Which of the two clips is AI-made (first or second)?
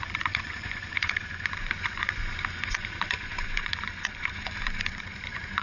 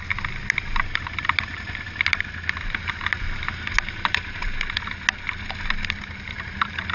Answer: first